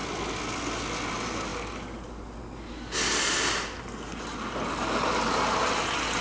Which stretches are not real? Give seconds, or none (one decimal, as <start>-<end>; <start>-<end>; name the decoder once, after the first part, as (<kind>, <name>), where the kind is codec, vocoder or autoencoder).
none